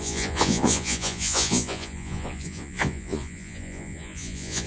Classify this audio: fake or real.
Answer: fake